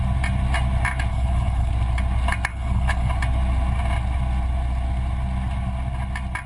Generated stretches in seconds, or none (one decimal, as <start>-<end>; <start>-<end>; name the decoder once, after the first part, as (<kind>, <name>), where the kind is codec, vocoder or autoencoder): 1.1-1.7 (codec, HILCodec); 2.5-3.1